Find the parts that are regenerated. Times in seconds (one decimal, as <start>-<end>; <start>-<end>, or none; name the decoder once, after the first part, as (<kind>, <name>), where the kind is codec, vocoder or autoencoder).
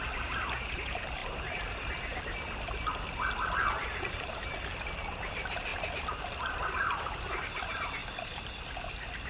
none